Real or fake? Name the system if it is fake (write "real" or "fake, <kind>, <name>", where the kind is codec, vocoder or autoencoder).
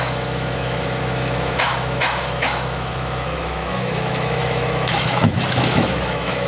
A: fake, autoencoder, DAC-VAE